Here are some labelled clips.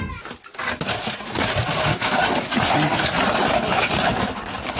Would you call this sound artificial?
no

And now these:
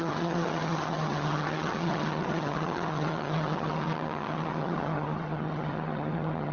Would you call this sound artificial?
yes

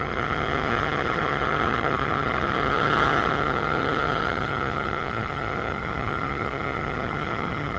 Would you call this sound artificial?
yes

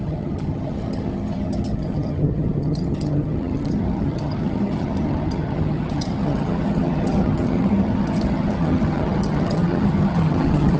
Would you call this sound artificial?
yes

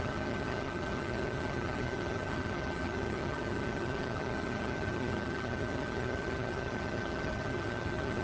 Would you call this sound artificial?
yes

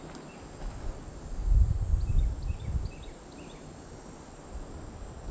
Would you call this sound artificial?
no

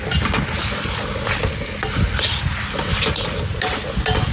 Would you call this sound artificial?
no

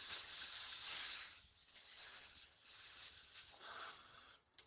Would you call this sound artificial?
yes